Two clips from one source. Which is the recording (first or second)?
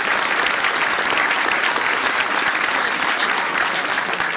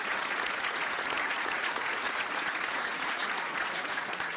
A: first